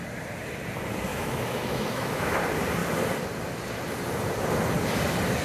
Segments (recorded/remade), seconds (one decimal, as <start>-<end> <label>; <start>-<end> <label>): 0.0-1.1 recorded; 1.1-2.4 remade; 2.4-5.4 recorded